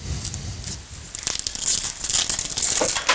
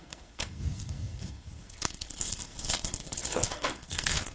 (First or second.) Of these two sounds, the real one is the first